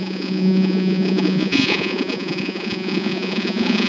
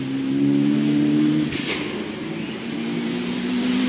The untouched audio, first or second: second